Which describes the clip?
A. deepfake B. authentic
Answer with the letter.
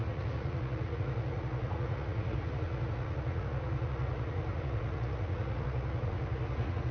A